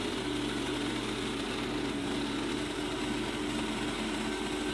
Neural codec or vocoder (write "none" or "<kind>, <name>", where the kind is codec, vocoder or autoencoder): none